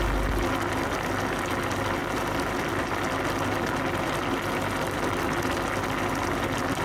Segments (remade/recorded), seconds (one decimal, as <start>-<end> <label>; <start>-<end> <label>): 0.0-6.8 recorded